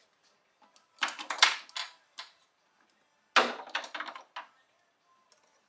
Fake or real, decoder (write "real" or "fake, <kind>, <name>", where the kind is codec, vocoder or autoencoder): real